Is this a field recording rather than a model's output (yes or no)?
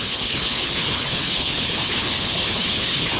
no